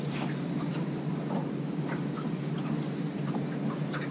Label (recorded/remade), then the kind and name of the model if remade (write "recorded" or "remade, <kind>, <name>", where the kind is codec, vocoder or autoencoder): recorded